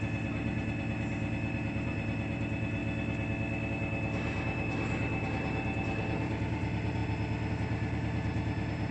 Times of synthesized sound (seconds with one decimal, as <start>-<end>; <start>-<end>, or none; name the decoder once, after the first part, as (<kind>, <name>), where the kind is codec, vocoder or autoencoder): 0.0-2.8 (vocoder, BigVGAN v2); 3.7-7.0; 7.5-8.9